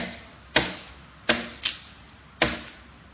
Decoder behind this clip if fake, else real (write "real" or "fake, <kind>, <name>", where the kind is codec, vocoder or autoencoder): real